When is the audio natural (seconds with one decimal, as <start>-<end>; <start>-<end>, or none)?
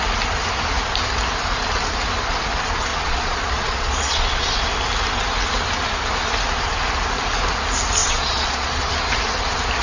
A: 0.0-2.9; 4.6-8.0; 8.9-9.8